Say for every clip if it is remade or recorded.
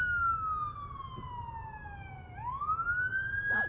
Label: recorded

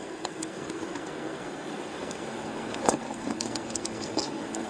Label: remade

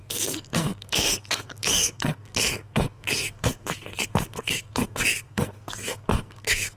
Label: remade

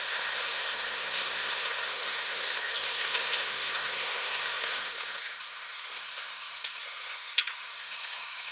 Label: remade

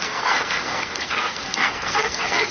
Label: remade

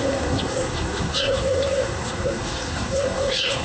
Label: remade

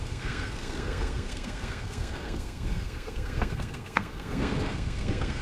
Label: remade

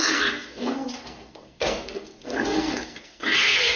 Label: remade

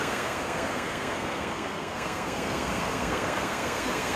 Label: remade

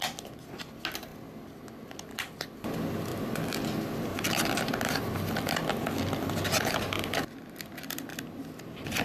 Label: recorded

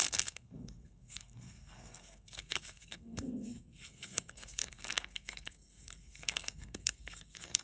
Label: remade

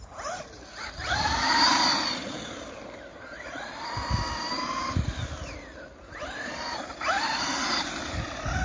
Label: recorded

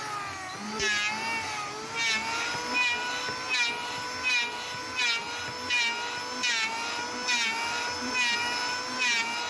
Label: recorded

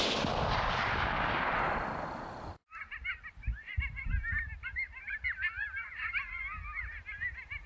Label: recorded